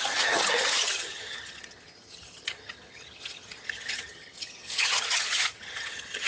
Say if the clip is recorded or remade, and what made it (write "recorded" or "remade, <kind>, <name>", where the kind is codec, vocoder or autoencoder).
remade, vocoder, HiFi-GAN